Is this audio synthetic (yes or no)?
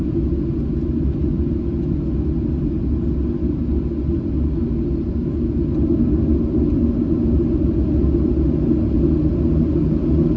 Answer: no